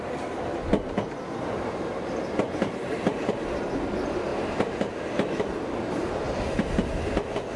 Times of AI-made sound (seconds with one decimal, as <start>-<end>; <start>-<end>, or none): none